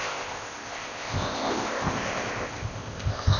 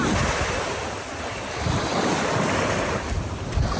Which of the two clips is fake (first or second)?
first